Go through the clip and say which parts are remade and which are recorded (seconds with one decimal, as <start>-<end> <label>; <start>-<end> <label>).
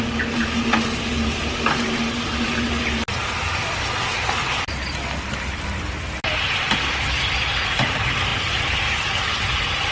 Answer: 0.0-9.9 recorded